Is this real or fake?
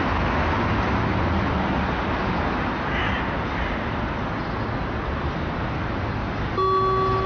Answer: real